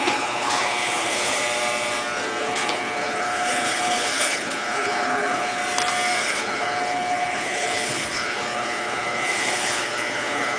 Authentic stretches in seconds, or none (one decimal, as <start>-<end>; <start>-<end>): 1.4-2.4; 5.6-6.2